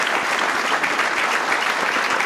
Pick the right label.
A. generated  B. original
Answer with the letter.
B